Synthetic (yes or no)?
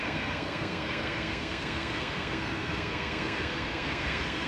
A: yes